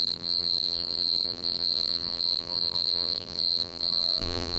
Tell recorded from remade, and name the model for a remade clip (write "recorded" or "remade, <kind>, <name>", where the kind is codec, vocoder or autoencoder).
remade, vocoder, BigVGAN v2